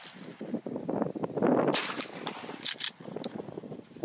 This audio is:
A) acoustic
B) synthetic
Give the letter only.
A